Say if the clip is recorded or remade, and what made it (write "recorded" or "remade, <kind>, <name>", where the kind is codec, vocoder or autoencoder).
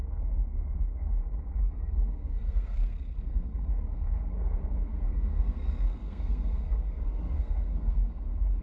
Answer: remade, codec, SNAC